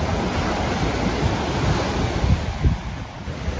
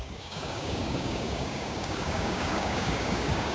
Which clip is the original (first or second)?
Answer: first